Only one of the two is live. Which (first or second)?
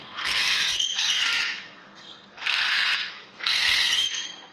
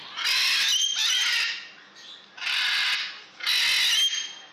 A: second